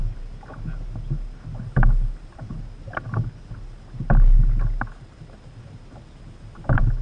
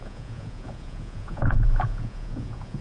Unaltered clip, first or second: first